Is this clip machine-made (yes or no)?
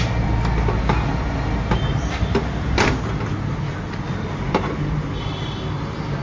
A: no